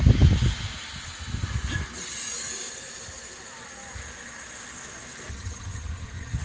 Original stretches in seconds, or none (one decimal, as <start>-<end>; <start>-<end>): 0.0-5.3